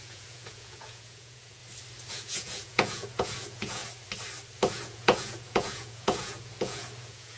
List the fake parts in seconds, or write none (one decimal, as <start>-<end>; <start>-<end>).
0.0-1.6; 2.1-3.8; 4.7-7.4